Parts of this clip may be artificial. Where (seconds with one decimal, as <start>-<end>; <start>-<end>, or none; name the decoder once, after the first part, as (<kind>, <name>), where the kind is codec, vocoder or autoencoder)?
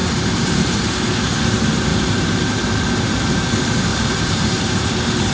0.0-0.7 (vocoder, BigVGAN v2); 1.9-3.4; 3.9-5.3